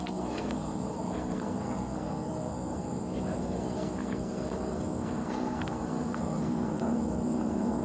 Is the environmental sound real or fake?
fake